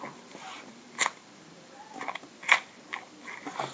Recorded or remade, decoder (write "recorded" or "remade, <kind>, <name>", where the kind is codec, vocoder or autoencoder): remade, vocoder, BigVGAN v2